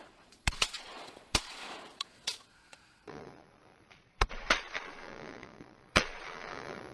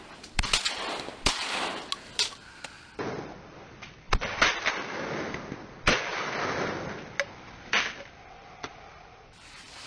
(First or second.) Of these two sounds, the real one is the second